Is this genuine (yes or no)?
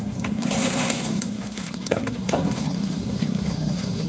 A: no